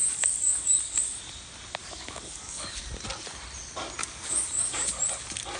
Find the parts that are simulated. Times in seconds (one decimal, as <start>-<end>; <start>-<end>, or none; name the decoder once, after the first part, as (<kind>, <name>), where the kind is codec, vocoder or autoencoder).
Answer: 0.0-1.2 (codec, DAC); 1.8-2.9; 4.0-5.0